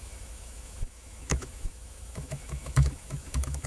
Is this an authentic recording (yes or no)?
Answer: no